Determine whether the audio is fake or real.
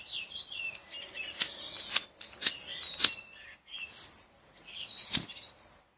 real